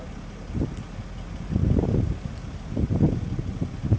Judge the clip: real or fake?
real